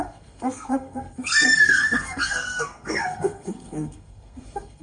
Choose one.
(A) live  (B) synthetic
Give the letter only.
B